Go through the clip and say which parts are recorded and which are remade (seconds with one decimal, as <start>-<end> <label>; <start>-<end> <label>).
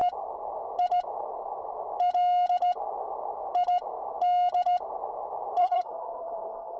0.0-5.6 recorded; 5.6-6.8 remade